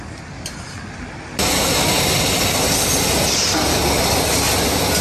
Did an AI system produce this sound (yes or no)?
no